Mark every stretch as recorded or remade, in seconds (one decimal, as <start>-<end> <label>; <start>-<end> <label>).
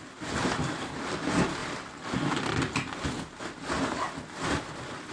0.0-5.1 recorded